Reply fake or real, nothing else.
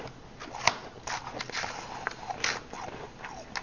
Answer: real